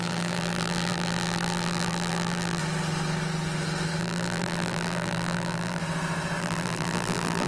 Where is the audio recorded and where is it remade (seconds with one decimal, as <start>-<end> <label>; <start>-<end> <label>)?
0.0-2.6 remade; 2.6-4.0 recorded; 4.0-5.8 remade; 5.8-6.4 recorded; 6.4-7.5 remade